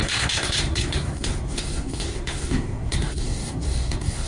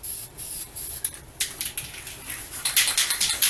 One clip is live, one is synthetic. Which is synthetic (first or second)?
first